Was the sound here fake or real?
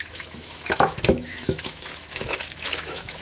fake